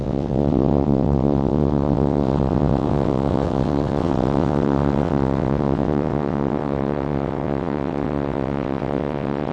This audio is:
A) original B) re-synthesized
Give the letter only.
B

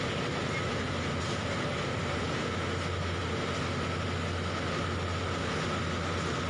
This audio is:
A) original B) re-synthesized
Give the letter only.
A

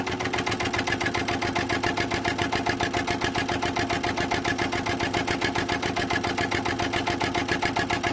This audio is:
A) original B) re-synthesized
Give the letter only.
A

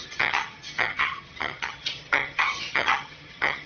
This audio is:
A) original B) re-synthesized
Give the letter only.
B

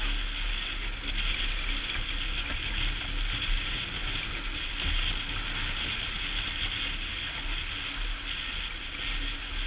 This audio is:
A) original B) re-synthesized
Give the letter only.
A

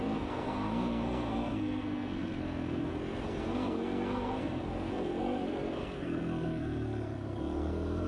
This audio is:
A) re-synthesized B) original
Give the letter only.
A